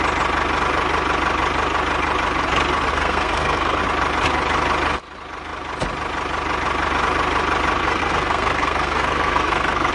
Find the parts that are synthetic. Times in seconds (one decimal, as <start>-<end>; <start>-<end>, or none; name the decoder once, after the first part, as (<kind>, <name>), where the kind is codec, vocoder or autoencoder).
2.9-3.8 (codec, SNAC); 7.8-9.9